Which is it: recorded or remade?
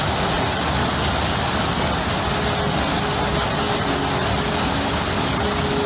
recorded